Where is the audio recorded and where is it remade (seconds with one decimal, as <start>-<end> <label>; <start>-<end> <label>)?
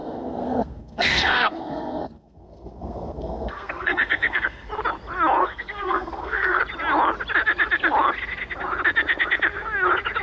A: 0.0-4.7 remade; 4.7-5.4 recorded; 5.4-6.6 remade; 6.6-10.2 recorded